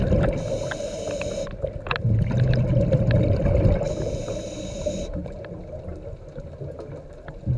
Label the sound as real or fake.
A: real